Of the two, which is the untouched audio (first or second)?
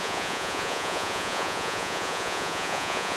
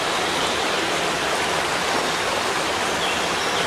second